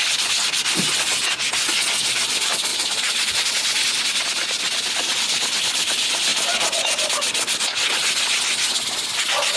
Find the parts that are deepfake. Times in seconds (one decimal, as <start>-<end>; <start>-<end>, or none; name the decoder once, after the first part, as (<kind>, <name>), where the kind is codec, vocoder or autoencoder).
2.7-3.3 (vocoder, Vocos)

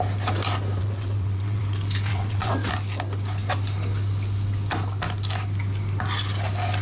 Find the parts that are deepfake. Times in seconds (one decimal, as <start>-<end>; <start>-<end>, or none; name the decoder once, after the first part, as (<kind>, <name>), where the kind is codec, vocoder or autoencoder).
0.8-1.6 (vocoder, WaveNeXt); 2.1-2.7

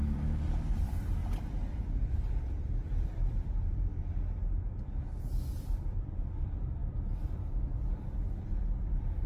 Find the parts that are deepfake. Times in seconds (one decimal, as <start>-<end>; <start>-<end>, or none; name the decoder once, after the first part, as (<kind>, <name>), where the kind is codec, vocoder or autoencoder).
0.0-3.9 (vocoder, BigVGAN v2); 5.6-6.8; 7.4-9.3